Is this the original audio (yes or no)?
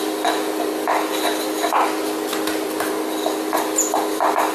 yes